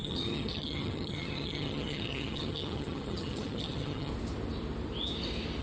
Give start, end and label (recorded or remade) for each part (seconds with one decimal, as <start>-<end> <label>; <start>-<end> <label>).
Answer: 0.0-4.1 remade; 4.1-5.6 recorded